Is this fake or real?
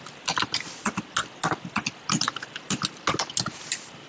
real